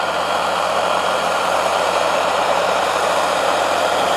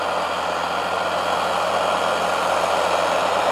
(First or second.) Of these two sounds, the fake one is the first